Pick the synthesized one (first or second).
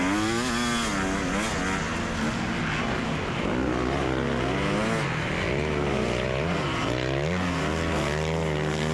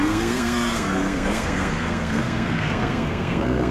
second